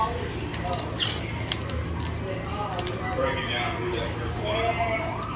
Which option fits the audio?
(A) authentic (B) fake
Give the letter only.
A